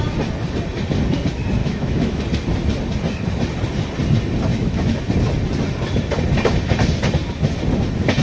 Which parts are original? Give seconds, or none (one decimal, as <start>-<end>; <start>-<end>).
0.0-1.6; 2.2-4.5; 5.0-8.2